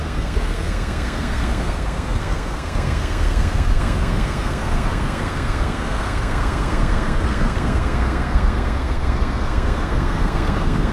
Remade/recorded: remade